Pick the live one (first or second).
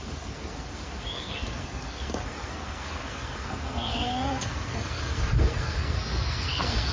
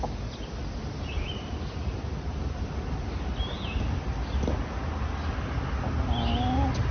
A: second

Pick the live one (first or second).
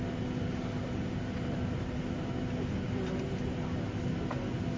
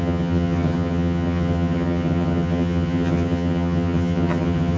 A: first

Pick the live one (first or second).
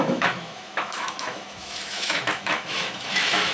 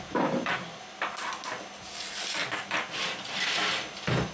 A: second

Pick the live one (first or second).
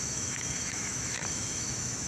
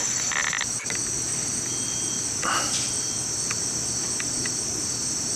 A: second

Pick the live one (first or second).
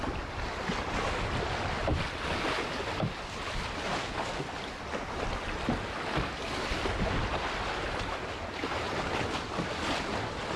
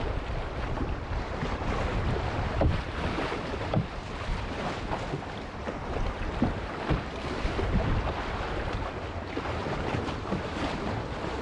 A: first